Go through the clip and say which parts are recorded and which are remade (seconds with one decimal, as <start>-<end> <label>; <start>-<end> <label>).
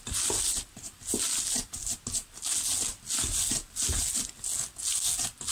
0.0-5.5 recorded